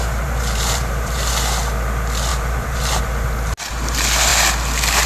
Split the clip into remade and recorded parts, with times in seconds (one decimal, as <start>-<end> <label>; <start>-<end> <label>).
0.0-1.3 remade; 1.3-2.3 recorded; 2.3-3.0 remade; 3.0-5.1 recorded